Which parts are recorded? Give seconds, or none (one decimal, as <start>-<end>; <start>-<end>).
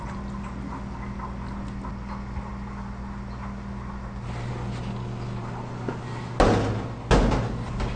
0.0-8.0